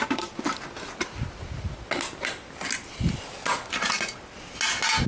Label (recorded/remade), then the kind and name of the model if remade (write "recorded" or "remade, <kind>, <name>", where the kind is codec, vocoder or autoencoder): recorded